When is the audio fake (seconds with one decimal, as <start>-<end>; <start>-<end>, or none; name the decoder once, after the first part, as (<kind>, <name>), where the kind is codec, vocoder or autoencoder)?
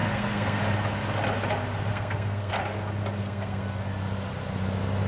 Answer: 0.0-0.6 (codec, SNAC); 1.9-2.5; 3.2-3.8